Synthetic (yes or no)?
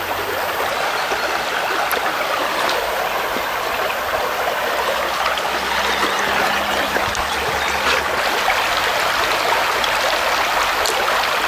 no